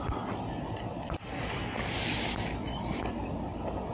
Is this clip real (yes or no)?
yes